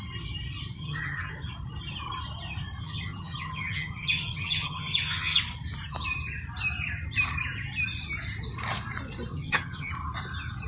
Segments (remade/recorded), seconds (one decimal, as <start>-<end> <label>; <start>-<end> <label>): 0.0-0.8 recorded; 0.8-1.3 remade; 1.3-2.8 recorded; 2.8-5.4 remade; 5.4-9.3 recorded; 9.3-9.9 remade; 9.9-10.7 recorded